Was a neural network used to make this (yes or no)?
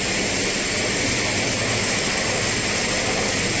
no